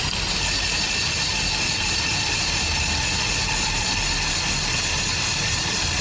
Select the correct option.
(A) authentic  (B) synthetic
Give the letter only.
A